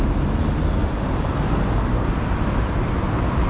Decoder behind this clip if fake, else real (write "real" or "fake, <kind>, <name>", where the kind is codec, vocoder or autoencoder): real